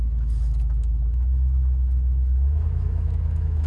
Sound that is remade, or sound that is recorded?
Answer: remade